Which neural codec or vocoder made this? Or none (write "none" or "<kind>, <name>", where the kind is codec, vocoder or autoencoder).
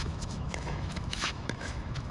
autoencoder, DAC-VAE